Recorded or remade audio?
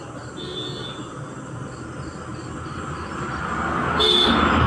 recorded